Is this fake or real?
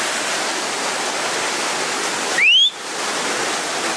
real